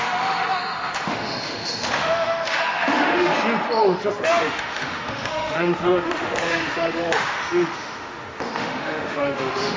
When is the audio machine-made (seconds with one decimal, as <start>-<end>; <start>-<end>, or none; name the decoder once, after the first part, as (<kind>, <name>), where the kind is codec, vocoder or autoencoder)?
0.0-3.3 (autoencoder, DAC-VAE); 3.8-9.8